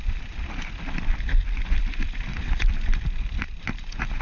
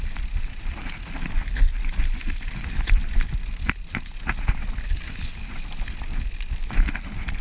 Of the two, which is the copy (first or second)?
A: first